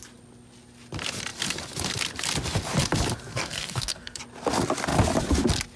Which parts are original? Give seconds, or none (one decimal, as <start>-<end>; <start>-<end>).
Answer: 0.0-3.3; 4.2-5.8